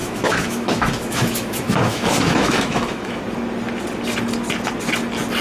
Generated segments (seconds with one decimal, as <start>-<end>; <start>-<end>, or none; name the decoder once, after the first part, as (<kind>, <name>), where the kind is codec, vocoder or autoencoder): 0.0-3.2 (autoencoder, DAC-VAE)

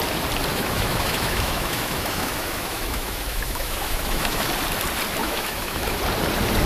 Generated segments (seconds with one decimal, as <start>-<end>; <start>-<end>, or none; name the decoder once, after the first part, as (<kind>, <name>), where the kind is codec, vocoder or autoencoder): 0.5-4.5 (autoencoder, DAC-VAE); 5.2-6.0

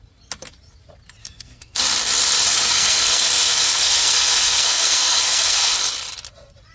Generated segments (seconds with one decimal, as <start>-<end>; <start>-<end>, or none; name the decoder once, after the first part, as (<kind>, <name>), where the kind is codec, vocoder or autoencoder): 1.2-1.8 (codec, SNAC); 2.5-5.7

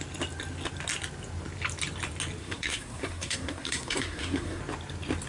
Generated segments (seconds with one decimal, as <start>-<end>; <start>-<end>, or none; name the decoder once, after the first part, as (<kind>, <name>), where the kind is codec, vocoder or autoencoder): 2.4-4.6 (codec, SNAC)